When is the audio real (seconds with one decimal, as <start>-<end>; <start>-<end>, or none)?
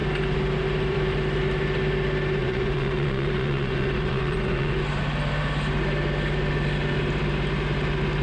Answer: 0.0-2.4; 4.7-8.2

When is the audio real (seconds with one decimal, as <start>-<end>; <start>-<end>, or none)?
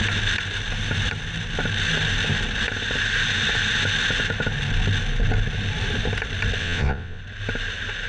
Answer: 0.0-6.6; 7.2-8.1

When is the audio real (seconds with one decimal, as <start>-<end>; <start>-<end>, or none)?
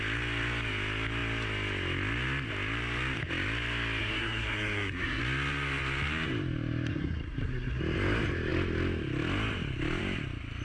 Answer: 0.0-4.0; 5.2-6.9; 7.8-10.6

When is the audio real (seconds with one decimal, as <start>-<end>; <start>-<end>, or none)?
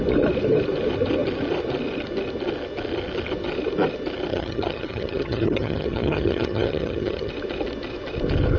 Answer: 0.0-4.3; 7.3-8.6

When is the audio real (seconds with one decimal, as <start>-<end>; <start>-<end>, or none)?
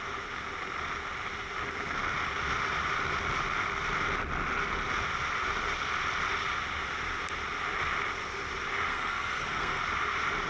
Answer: 0.0-8.9; 9.8-10.5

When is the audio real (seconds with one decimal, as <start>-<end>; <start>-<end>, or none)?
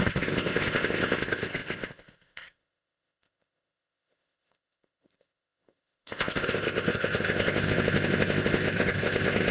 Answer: none